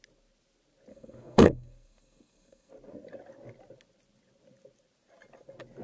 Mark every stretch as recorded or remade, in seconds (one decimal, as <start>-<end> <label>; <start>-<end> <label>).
0.0-0.9 recorded; 0.9-2.7 remade; 2.7-5.8 recorded